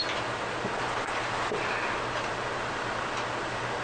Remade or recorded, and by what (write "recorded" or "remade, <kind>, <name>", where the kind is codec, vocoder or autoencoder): recorded